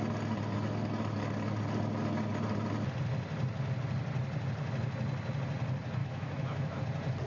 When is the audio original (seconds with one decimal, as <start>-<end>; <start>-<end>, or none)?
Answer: 0.0-6.0; 6.8-7.3